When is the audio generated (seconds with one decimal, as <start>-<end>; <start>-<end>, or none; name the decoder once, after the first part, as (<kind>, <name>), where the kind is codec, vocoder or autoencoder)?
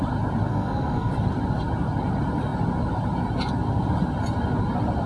0.5-1.1 (codec, SNAC)